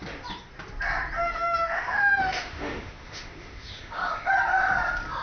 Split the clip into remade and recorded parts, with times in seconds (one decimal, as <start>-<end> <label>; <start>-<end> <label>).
0.0-1.2 recorded; 1.2-4.3 remade; 4.3-5.2 recorded